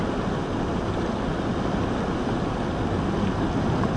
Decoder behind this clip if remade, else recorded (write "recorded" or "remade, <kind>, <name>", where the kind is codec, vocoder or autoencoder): recorded